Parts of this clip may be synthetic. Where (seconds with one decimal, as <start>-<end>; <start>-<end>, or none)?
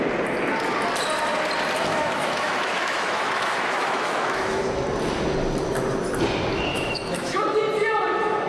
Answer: 1.9-4.6; 6.7-7.6